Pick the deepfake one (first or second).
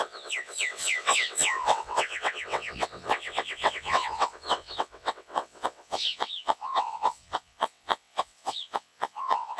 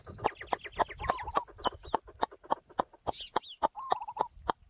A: first